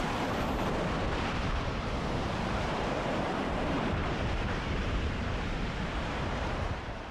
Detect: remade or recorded remade